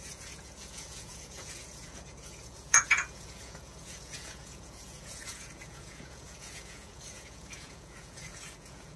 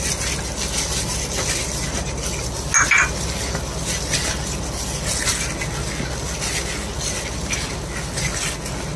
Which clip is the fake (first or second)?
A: first